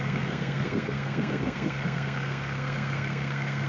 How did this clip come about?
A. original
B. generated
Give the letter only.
B